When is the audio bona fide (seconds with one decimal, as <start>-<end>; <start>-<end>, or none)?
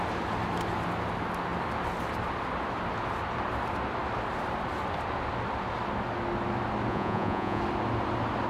0.0-6.9; 7.6-8.5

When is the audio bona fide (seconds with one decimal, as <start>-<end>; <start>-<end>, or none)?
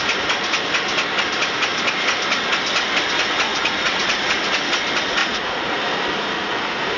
0.0-3.5; 4.6-5.2; 5.8-7.0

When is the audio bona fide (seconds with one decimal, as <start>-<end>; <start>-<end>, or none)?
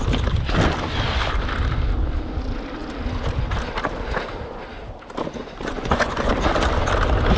0.0-5.4; 6.3-7.4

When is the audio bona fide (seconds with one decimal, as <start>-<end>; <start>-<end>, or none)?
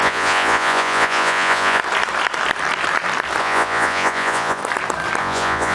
1.8-3.4; 4.6-5.2